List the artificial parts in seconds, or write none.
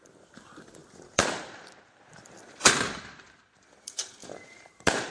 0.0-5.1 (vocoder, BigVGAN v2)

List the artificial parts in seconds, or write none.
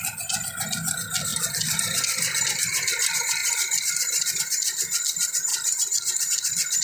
1.3-2.5 (vocoder, BigVGAN v2)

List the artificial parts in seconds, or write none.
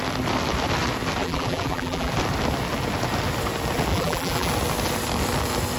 1.2-2.1 (vocoder, BigVGAN v2); 3.9-4.5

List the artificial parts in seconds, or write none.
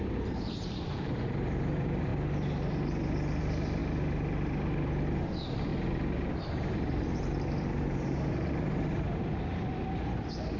0.0-2.1 (vocoder, BigVGAN v2); 3.4-3.8; 5.2-5.7; 6.4-10.6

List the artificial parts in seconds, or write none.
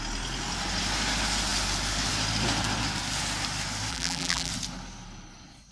3.9-4.5 (vocoder, BigVGAN v2)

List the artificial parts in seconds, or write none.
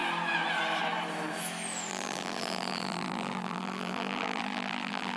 1.9-5.2 (vocoder, BigVGAN v2)